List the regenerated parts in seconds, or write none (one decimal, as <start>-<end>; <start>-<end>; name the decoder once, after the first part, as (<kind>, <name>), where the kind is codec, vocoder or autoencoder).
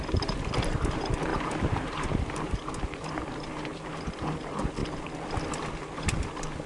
1.3-2.7 (vocoder, BigVGAN v2)